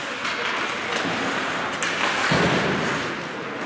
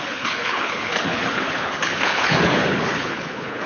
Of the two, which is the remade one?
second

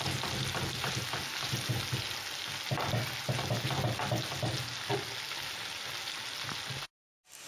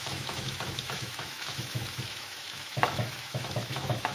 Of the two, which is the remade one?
second